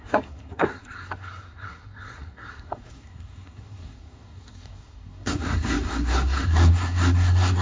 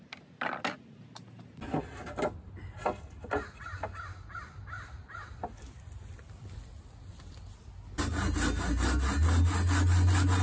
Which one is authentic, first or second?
second